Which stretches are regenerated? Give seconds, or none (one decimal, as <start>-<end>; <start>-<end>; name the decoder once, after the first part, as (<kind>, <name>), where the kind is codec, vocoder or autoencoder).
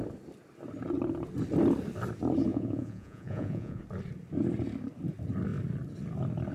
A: 2.5-3.8 (vocoder, Vocos)